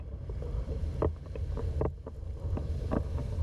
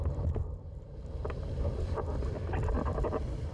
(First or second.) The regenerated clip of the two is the second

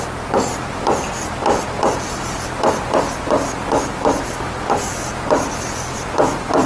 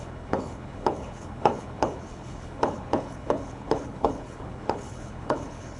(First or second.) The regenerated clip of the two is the second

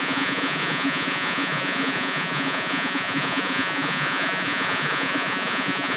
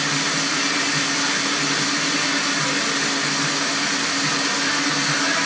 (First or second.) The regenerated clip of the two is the first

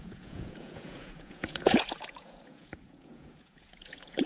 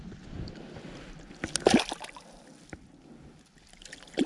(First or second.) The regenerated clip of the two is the first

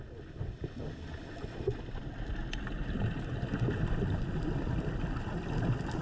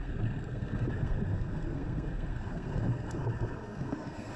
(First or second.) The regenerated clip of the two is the second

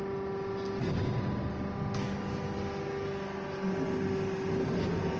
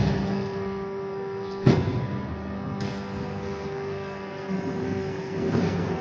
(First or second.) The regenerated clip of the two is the second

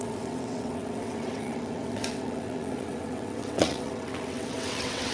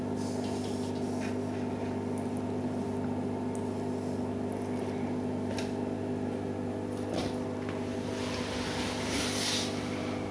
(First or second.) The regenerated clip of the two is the first